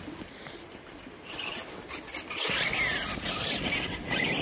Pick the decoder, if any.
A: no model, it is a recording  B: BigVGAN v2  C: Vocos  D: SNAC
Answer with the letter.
A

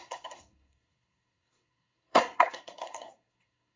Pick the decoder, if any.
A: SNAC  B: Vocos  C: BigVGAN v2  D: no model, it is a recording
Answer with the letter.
A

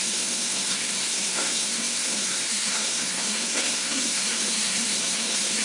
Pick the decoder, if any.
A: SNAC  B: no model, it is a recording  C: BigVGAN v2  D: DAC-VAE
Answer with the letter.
A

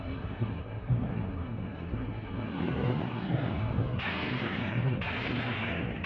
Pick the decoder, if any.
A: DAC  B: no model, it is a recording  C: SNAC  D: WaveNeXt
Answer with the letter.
C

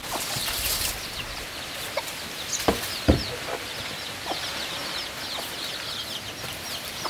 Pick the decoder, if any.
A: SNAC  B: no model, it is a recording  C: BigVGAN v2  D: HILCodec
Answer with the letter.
B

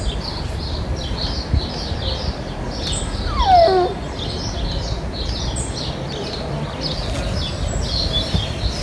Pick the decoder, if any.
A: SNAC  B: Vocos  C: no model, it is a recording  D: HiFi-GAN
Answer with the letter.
C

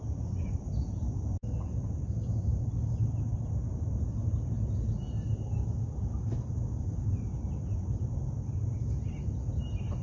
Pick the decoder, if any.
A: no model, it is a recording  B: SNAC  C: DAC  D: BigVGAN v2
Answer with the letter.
A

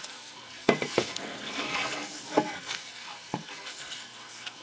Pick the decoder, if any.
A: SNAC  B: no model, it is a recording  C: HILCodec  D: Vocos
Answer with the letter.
A